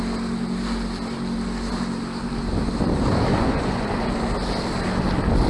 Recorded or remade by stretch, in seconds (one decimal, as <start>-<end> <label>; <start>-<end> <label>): 0.0-3.3 recorded; 3.3-4.0 remade; 4.0-5.5 recorded

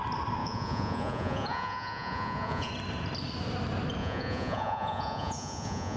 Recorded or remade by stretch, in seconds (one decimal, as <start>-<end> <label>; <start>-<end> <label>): 0.0-0.4 recorded; 0.4-2.7 remade; 2.7-4.0 recorded; 4.0-6.0 remade

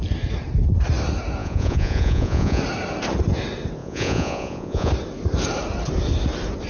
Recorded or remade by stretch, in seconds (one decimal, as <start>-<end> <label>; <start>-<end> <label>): 0.0-1.4 recorded; 1.4-2.6 remade; 2.6-3.8 recorded; 3.8-4.9 remade; 4.9-6.7 recorded

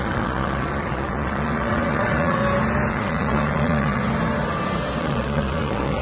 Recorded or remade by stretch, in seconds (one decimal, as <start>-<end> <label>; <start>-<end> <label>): 0.0-2.4 remade; 2.4-2.9 recorded; 2.9-4.0 remade; 4.0-5.0 recorded; 5.0-6.0 remade

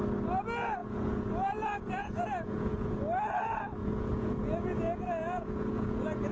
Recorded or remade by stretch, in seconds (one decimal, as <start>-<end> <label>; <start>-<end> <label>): 0.0-0.8 recorded; 0.8-3.0 remade; 3.0-3.8 recorded; 3.8-6.3 remade

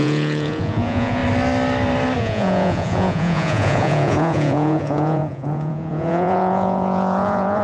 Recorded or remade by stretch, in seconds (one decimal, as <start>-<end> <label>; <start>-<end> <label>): 0.0-1.2 remade; 1.2-2.2 recorded; 2.2-7.6 remade